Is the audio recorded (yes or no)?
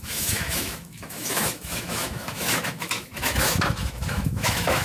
no